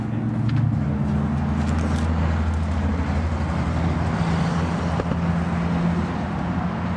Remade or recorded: recorded